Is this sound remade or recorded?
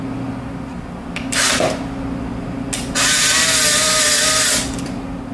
recorded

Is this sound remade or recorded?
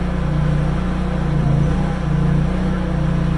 recorded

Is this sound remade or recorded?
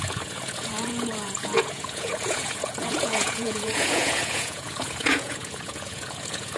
remade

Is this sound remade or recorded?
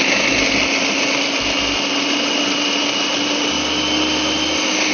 recorded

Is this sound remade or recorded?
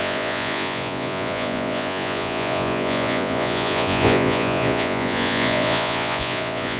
remade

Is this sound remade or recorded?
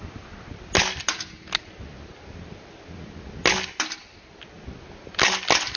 recorded